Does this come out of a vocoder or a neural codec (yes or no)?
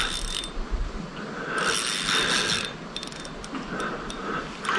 no